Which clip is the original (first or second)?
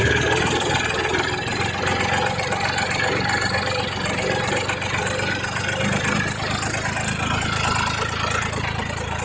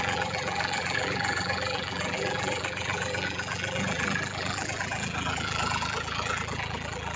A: first